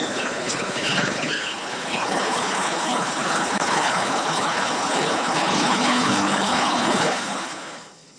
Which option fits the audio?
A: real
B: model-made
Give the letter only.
B